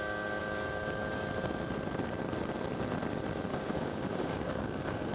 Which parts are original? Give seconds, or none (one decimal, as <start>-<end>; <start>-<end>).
0.0-3.5